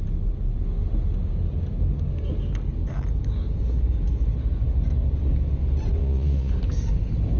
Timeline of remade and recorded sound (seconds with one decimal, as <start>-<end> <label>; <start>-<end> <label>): 0.0-6.0 recorded; 6.0-6.5 remade; 6.5-7.4 recorded